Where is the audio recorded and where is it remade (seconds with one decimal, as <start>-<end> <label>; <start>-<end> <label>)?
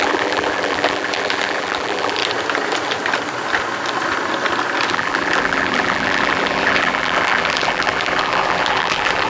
0.0-2.2 remade; 2.2-4.9 recorded; 4.9-9.3 remade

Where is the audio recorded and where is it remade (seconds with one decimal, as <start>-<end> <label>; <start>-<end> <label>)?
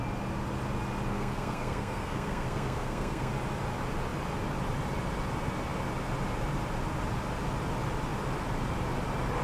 0.0-1.1 recorded; 1.1-3.3 remade; 3.3-9.4 recorded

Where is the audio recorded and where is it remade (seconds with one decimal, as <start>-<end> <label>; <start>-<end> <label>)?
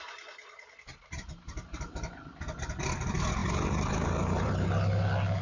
0.0-0.4 recorded; 0.4-1.8 remade; 1.8-3.4 recorded; 3.4-4.7 remade; 4.7-5.4 recorded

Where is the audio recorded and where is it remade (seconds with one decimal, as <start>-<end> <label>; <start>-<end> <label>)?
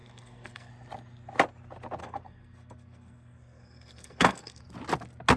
0.0-0.7 remade; 0.7-2.0 recorded; 2.0-4.6 remade; 4.6-5.4 recorded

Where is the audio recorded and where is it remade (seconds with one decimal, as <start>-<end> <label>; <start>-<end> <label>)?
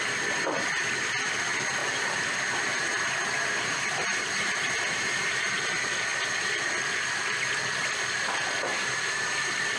0.0-1.8 recorded; 1.8-5.6 remade; 5.6-8.7 recorded; 8.7-9.2 remade; 9.2-9.8 recorded